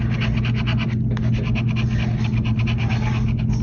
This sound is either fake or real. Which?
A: real